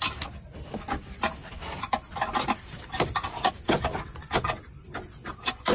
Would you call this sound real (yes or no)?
no